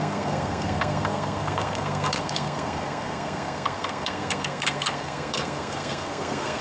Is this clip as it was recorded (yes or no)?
no